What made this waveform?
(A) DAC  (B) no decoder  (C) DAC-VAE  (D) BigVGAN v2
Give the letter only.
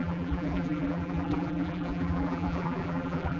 D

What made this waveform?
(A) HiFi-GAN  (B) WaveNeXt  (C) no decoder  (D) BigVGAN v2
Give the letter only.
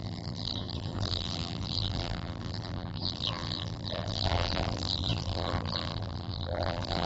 D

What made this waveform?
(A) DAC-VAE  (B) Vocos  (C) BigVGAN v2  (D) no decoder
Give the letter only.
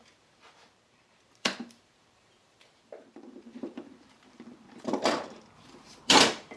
C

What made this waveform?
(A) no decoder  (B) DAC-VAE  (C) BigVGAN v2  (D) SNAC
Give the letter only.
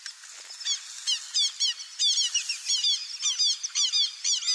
A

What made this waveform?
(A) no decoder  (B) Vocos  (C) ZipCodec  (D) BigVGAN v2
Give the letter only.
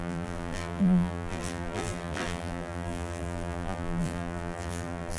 D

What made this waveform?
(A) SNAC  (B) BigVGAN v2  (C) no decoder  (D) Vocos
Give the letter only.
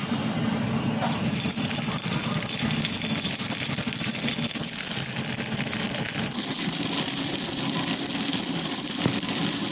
C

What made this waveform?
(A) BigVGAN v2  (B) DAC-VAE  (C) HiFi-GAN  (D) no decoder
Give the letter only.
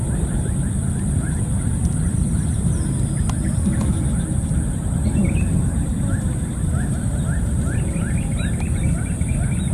D